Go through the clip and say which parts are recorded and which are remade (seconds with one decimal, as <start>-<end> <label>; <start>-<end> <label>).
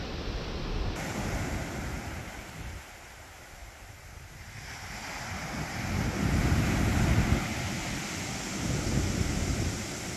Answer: 0.0-3.6 recorded; 3.6-4.3 remade; 4.3-6.4 recorded; 6.4-6.9 remade; 6.9-10.2 recorded